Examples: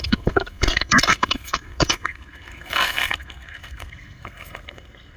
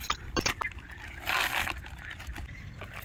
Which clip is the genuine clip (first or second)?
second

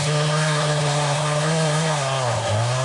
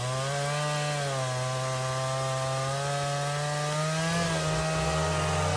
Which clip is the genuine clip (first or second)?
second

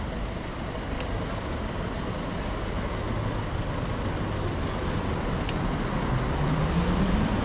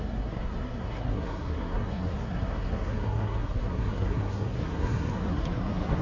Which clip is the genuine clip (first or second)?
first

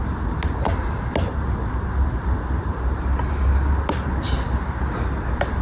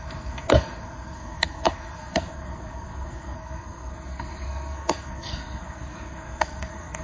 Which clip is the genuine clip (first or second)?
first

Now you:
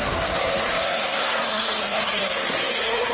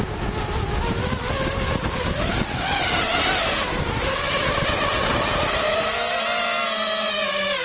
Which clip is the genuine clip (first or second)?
second